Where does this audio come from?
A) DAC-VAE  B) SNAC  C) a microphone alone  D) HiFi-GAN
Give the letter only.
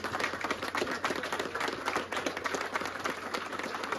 C